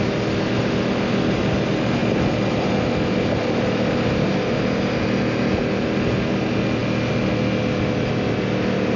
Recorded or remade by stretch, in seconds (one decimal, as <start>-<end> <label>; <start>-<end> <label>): 0.0-9.0 recorded